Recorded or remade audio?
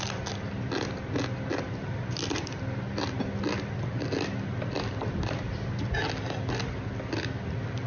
recorded